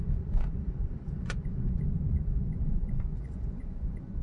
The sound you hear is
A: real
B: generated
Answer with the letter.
B